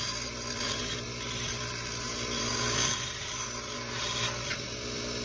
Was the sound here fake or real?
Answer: real